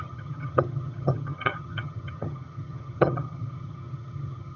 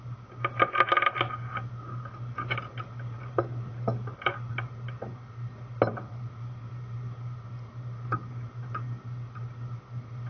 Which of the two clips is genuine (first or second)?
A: second